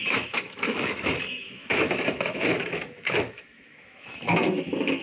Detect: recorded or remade remade